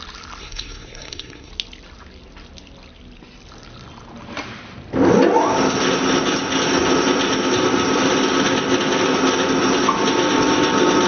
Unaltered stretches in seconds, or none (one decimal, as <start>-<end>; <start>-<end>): 0.0-0.4; 1.5-11.1